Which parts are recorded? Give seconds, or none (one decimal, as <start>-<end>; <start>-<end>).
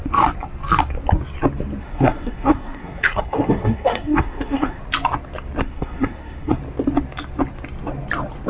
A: 0.0-1.8; 4.8-5.6; 6.6-8.5